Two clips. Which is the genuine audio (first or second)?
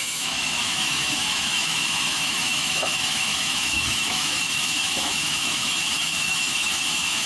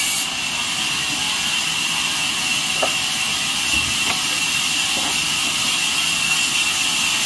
second